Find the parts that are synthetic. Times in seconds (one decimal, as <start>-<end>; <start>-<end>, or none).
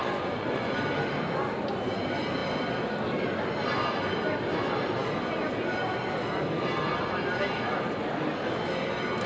0.0-0.7